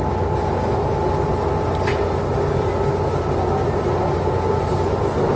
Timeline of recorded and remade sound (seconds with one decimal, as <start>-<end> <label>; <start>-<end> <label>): 0.0-5.4 recorded